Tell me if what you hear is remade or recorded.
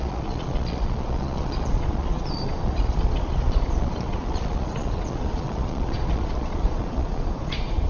remade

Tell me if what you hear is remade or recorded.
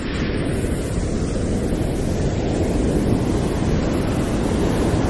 recorded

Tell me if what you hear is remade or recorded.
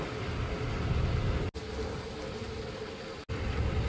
recorded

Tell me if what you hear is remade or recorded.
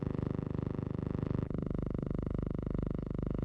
remade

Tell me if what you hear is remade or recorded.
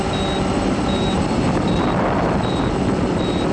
remade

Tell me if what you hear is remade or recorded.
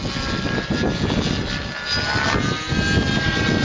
recorded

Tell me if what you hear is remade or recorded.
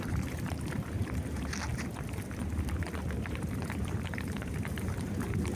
remade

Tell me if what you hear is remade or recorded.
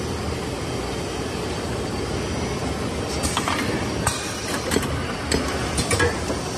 recorded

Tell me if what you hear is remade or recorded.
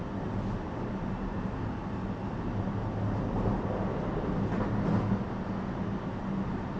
recorded